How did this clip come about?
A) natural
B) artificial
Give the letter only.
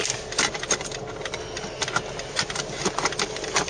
A